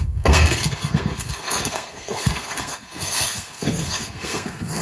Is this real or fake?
fake